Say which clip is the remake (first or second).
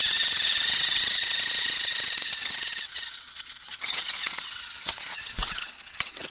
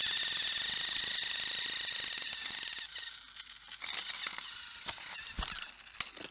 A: first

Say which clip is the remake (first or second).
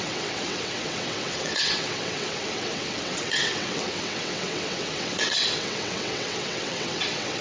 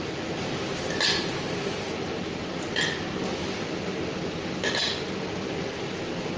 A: first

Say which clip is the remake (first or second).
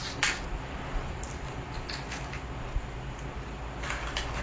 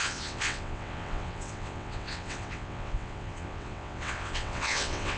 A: second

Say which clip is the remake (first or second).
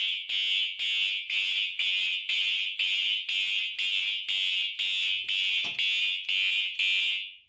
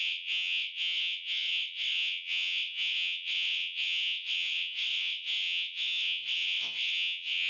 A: second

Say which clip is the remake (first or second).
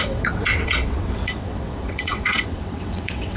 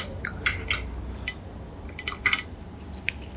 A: first